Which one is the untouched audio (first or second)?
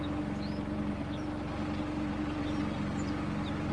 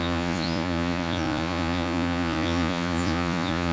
first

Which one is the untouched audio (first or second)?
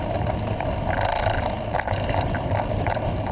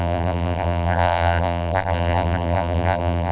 first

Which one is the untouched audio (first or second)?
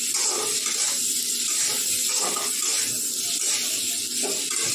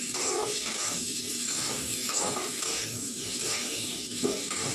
first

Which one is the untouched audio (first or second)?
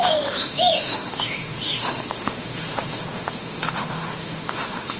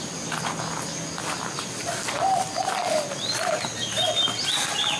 second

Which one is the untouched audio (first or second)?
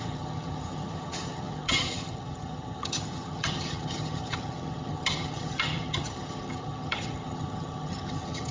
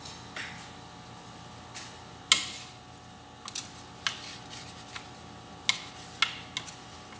second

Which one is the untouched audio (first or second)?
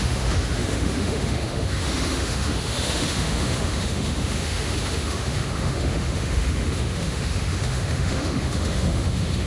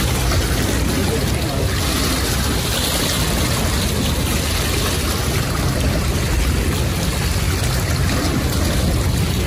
second